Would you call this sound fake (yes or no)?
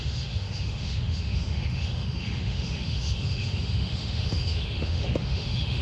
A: yes